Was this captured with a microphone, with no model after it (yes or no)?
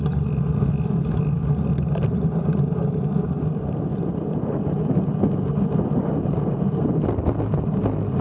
yes